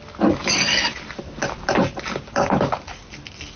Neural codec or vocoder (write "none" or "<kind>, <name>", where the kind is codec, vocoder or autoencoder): none